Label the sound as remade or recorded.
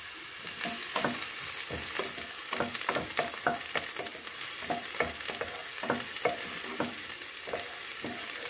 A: recorded